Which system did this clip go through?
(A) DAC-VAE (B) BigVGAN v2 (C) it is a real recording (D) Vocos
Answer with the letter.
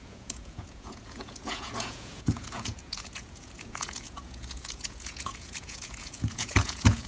D